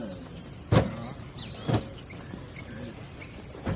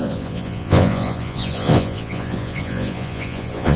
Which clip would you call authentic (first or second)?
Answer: first